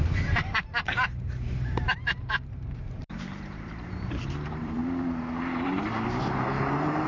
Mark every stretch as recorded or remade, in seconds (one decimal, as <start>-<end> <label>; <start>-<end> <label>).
0.0-4.8 remade; 4.8-5.4 recorded; 5.4-7.1 remade